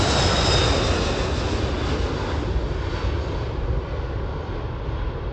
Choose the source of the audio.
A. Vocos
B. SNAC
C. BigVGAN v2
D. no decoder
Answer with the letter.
D